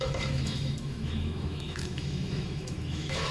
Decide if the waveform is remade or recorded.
remade